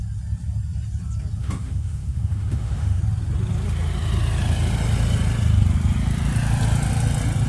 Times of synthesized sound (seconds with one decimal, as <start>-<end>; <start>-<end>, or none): 1.4-3.0

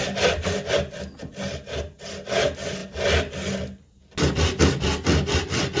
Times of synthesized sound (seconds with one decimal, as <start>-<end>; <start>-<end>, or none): none

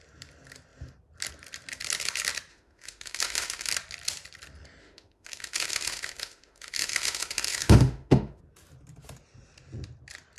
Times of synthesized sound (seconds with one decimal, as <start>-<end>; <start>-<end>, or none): 2.5-3.7; 4.8-8.4

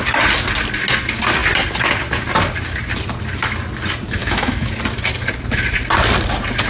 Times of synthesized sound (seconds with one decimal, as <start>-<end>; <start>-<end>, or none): 4.2-4.7